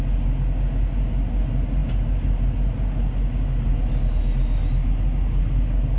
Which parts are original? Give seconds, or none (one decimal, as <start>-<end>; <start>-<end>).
0.0-6.0